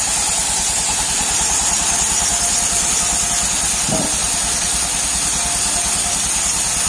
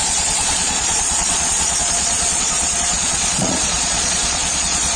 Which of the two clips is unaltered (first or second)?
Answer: first